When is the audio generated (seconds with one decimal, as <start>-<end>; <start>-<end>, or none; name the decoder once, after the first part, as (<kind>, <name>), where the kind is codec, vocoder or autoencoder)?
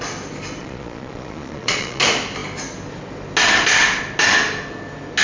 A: 0.6-2.0 (vocoder, Vocos)